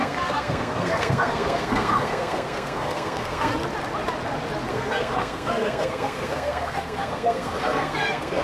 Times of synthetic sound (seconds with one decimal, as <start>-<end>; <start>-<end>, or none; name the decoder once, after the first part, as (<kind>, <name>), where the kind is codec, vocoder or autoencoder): 0.0-3.5 (codec, SNAC); 4.7-8.4